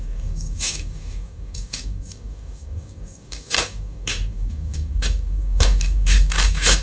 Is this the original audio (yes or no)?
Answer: no